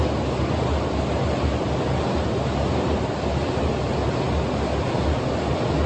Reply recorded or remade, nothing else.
recorded